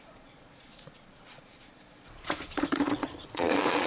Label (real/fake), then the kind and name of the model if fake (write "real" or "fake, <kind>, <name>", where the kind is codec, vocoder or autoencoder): fake, vocoder, Vocos